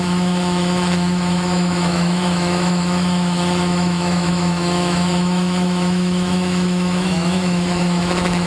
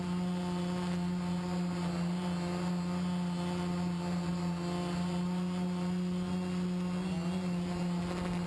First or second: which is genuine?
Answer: second